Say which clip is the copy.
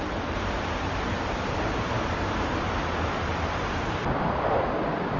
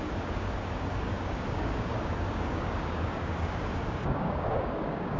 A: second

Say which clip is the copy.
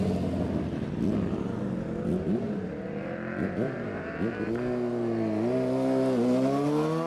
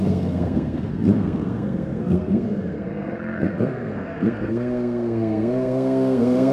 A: second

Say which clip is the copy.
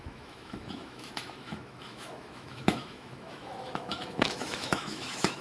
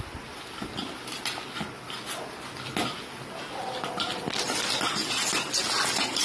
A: first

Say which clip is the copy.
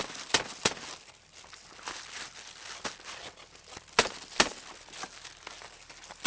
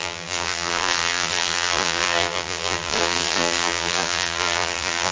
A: second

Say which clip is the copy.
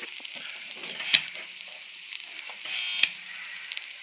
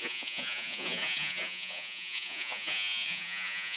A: second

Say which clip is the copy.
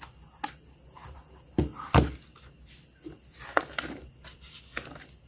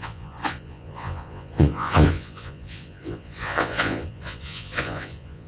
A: second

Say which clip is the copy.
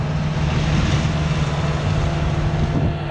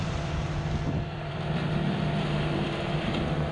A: second